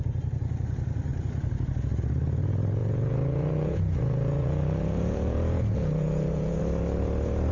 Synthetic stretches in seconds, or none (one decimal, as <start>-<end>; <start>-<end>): 2.8-6.6